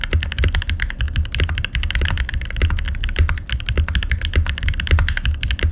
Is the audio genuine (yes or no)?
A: yes